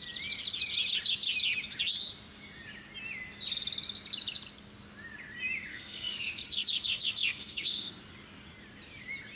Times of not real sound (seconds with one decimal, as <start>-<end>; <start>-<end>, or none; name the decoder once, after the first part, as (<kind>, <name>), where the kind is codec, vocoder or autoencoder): 5.7-8.0 (codec, SNAC)